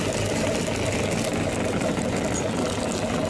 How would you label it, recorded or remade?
recorded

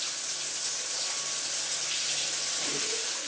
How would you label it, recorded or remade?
recorded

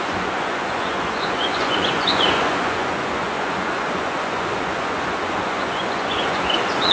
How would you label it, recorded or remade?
remade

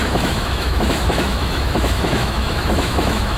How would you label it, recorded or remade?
remade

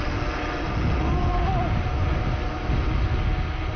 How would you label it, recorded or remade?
recorded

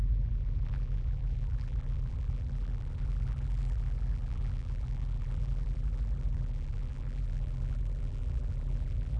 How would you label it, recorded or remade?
remade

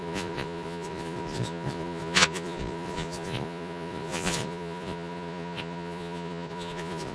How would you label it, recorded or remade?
remade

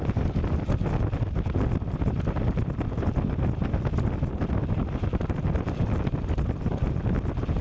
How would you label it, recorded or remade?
recorded